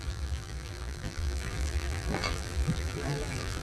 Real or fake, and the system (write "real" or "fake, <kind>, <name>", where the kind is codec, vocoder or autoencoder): fake, vocoder, BigVGAN v2